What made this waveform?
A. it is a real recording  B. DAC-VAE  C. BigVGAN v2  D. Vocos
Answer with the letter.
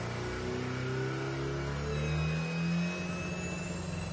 A